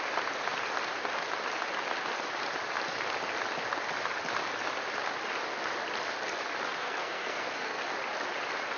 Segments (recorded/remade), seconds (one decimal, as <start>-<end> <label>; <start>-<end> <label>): 0.0-6.8 recorded; 6.8-7.8 remade; 7.8-8.8 recorded